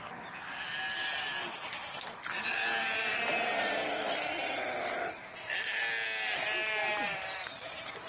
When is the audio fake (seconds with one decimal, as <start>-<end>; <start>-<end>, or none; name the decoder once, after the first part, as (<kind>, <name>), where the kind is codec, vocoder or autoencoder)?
3.1-4.2 (vocoder, BigVGAN v2); 6.8-8.1